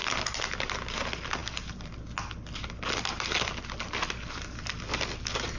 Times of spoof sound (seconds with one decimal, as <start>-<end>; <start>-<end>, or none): none